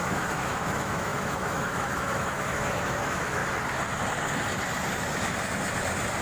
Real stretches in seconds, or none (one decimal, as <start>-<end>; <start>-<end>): 3.4-6.2